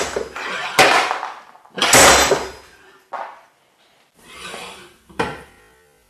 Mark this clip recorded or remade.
recorded